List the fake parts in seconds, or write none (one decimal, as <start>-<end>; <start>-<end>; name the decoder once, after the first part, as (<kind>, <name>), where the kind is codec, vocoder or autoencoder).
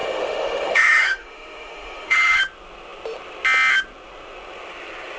0.0-2.4 (autoencoder, DAC-VAE)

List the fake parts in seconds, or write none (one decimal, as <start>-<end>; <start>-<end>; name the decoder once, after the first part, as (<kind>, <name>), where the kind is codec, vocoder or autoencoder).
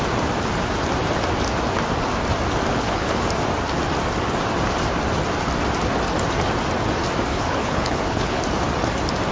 2.7-3.2 (codec, HILCodec); 7.3-8.4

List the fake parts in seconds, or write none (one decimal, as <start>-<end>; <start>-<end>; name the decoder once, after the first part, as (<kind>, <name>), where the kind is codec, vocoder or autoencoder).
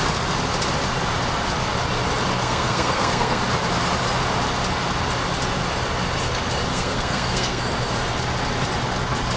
2.4-3.4 (codec, SNAC); 6.7-7.6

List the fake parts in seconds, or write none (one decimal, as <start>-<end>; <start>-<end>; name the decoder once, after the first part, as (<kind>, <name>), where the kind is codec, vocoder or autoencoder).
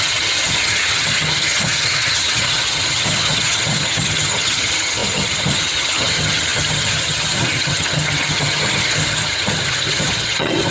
0.0-10.7 (vocoder, HiFi-GAN)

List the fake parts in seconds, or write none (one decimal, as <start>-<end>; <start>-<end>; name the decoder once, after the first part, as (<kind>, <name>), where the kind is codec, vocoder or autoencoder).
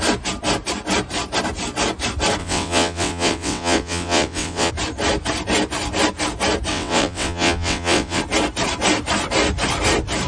2.4-4.7 (vocoder, WaveNeXt); 6.7-8.2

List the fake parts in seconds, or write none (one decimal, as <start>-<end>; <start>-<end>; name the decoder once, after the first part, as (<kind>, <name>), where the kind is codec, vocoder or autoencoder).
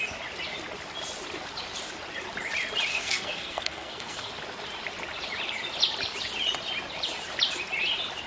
2.9-4.3 (codec, SNAC)